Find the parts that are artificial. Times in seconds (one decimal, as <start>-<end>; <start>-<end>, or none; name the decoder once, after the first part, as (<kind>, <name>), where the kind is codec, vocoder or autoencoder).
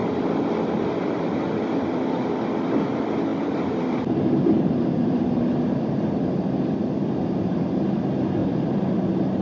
0.0-0.5 (vocoder, BigVGAN v2); 3.3-7.2; 8.4-8.9